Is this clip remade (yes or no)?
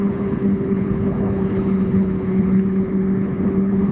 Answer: yes